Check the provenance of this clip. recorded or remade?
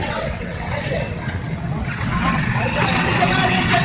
remade